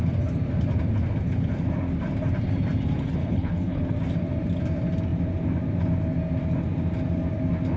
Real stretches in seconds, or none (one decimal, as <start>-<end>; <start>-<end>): 0.0-3.2; 3.8-7.8